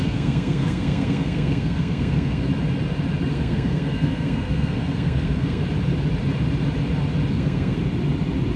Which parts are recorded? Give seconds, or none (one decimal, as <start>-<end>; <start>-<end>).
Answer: 2.5-3.3; 5.6-7.3; 7.8-8.6